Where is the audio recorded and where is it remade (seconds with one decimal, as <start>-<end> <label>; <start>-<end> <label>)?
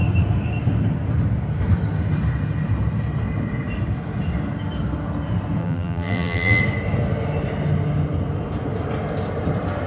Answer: 0.0-5.6 recorded; 5.6-6.6 remade; 6.6-9.9 recorded